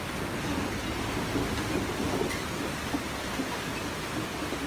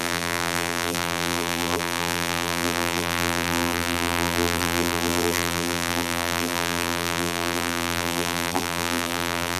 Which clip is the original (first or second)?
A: first